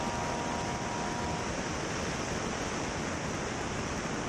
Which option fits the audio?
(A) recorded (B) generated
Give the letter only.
A